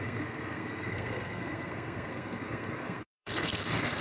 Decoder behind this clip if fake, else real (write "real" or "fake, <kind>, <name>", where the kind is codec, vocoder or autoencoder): fake, codec, SNAC